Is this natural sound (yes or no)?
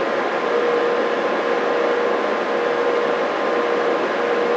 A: yes